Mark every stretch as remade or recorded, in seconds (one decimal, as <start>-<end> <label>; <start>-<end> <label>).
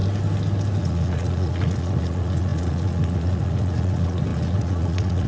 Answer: 0.0-0.8 recorded; 0.8-5.3 remade